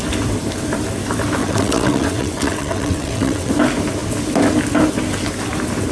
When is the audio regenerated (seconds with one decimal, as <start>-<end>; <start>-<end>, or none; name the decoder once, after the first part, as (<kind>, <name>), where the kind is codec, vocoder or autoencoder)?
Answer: 1.4-3.5 (vocoder, WaveNeXt)

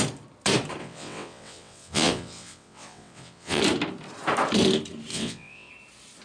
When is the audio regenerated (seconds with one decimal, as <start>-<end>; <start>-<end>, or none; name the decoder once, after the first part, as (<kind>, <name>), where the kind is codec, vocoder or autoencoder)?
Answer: 0.8-3.6 (vocoder, WaveNeXt); 5.1-5.7

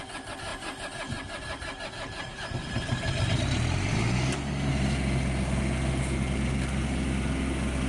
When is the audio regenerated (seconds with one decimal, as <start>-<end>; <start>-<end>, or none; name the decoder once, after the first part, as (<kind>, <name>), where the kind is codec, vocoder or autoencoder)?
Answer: 3.9-4.7 (codec, DAC)

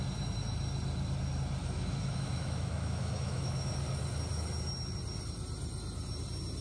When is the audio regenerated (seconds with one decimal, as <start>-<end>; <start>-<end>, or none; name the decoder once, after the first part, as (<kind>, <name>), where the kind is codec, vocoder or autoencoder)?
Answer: 1.6-3.7 (autoencoder, DAC-VAE)

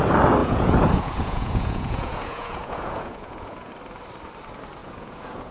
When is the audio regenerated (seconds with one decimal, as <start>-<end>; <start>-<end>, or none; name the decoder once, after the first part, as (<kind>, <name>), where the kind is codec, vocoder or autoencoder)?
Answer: 0.4-3.7 (vocoder, Vocos); 4.8-5.5

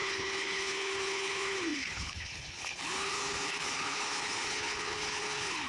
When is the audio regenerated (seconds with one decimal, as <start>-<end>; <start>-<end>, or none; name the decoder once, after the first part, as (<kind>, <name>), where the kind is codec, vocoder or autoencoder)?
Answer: 0.0-5.7 (codec, HILCodec)

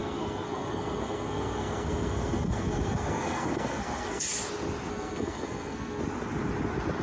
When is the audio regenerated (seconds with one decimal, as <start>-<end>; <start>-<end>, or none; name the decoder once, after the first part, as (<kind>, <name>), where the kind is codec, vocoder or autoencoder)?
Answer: 0.0-4.2 (codec, SNAC); 4.9-6.0

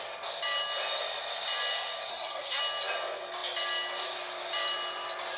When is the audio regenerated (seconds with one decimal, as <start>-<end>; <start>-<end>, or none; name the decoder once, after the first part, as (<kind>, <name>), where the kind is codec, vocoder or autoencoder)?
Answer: 2.1-2.6 (codec, SNAC)